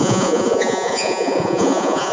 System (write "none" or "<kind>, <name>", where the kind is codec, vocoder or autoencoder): vocoder, Vocos